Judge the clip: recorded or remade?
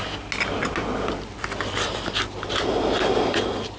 recorded